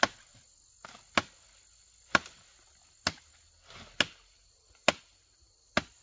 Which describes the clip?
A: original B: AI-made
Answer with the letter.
A